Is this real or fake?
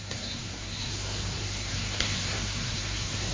fake